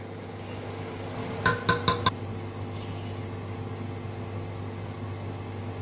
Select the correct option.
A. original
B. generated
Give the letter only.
A